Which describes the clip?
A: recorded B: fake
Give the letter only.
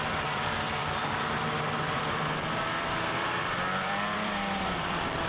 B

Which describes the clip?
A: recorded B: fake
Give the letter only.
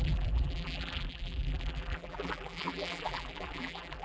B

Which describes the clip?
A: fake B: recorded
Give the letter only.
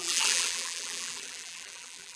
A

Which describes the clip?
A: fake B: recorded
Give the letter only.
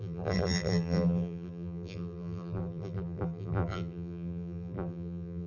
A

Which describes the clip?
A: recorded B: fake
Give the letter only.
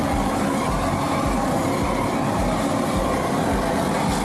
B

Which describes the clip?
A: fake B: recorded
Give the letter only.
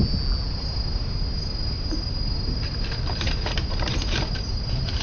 B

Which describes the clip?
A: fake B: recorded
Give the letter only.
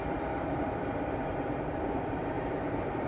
A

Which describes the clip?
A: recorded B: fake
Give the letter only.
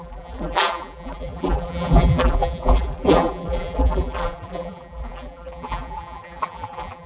B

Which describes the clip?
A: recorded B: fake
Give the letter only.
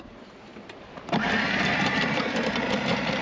B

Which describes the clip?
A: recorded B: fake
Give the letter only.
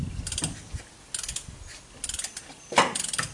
A